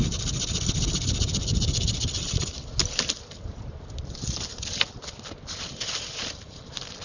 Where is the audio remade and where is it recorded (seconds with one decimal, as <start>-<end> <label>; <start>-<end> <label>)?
0.0-7.0 recorded